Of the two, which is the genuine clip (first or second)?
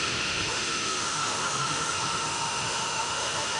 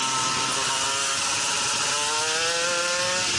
second